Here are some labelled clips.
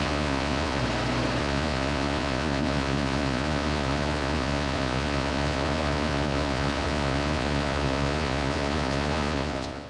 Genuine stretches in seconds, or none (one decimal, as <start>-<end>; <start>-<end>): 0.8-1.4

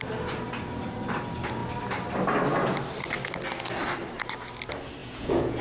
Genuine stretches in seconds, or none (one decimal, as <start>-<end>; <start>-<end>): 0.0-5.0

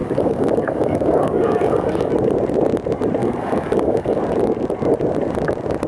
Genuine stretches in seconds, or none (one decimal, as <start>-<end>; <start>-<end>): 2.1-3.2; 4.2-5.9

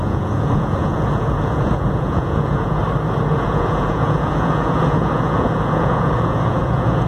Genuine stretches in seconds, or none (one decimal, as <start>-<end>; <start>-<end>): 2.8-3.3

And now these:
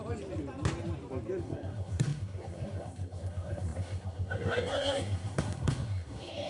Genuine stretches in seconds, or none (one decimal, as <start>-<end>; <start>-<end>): 0.0-1.4